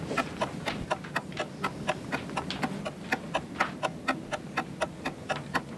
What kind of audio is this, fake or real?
real